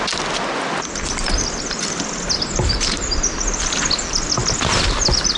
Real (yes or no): yes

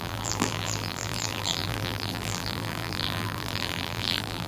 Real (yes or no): no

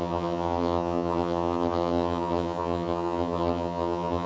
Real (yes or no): no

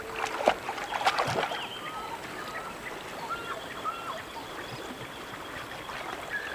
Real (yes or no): yes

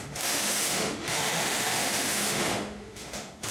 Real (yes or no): no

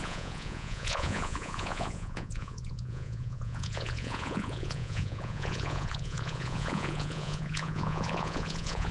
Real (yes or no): no